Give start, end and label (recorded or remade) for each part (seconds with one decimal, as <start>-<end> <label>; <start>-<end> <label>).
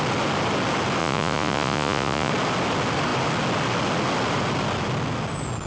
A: 0.0-1.0 recorded; 1.0-2.3 remade; 2.3-5.7 recorded